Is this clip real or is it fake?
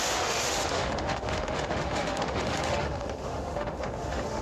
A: fake